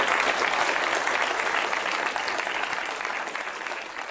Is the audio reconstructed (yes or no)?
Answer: no